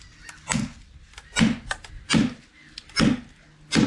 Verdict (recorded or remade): recorded